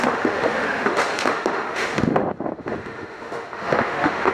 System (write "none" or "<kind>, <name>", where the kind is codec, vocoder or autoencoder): autoencoder, DAC-VAE